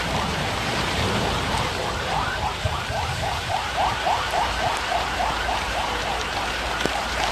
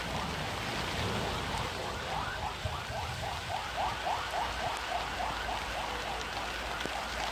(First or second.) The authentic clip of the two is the second